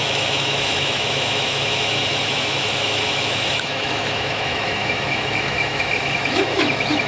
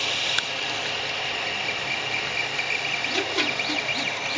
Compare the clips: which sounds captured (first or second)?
second